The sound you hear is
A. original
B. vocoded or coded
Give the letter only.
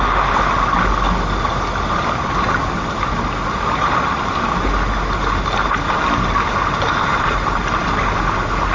A